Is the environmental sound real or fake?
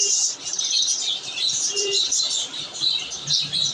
fake